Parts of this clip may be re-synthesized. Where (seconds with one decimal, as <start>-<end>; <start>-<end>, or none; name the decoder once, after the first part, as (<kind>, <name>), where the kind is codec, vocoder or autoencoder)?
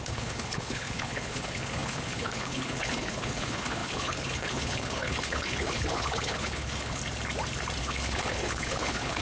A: 0.0-7.0 (codec, HILCodec); 7.8-9.2